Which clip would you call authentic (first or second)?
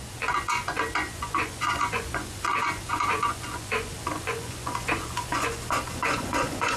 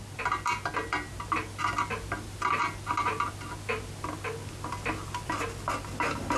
second